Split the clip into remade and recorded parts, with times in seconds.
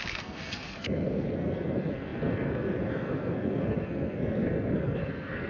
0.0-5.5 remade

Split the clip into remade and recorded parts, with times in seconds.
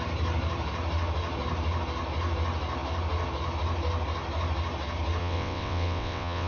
0.0-5.2 recorded; 5.2-6.5 remade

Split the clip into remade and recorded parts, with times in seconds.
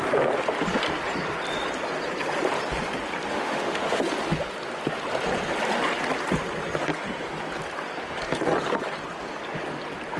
0.0-3.3 recorded; 3.3-4.0 remade; 4.0-10.2 recorded